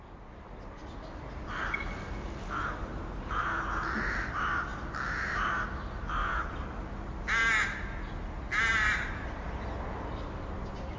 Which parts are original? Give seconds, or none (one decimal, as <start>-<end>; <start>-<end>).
0.0-11.0

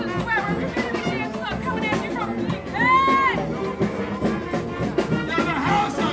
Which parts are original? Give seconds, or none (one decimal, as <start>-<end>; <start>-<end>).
0.0-6.1